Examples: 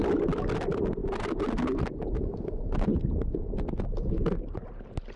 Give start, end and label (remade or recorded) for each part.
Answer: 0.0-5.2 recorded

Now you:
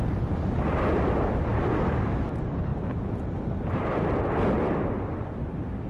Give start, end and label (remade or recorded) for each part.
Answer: 0.0-5.9 recorded

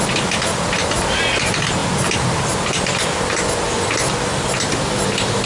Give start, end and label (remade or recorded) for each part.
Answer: 0.0-5.5 recorded